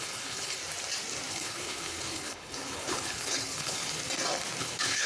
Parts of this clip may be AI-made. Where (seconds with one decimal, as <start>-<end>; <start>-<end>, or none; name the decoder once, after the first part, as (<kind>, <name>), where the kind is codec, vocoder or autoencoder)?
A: 0.0-0.6 (codec, HILCodec); 1.3-4.0; 4.6-5.1